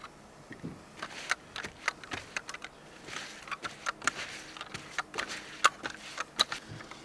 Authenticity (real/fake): real